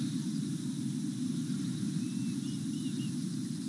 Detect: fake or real real